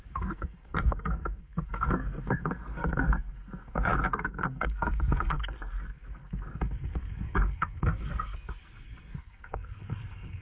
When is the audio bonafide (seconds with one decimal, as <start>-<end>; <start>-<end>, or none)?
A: none